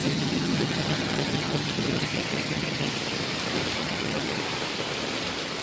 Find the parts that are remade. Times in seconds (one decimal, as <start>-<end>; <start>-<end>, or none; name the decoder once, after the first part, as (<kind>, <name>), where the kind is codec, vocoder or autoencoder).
0.0-2.9 (vocoder, HiFi-GAN); 3.8-4.4